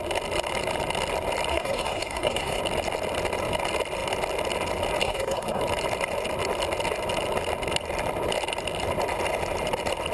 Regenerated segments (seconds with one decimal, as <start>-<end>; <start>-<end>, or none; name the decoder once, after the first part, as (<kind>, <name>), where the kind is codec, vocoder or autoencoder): 1.5-2.6 (codec, SNAC); 5.0-5.6